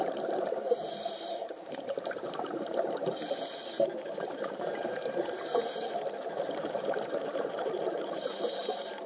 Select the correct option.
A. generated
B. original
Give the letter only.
A